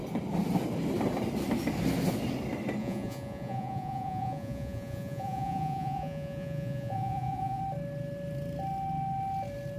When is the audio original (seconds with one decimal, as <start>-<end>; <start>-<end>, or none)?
0.0-2.8; 7.6-9.8